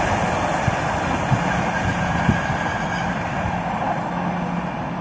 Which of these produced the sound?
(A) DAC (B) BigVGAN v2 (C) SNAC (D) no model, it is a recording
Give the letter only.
D